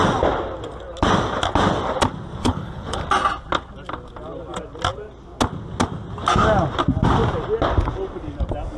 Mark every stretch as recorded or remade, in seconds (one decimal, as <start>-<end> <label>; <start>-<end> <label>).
0.0-2.4 recorded; 2.4-3.0 remade; 3.0-8.8 recorded